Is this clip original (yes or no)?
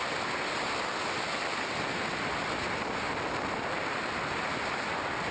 yes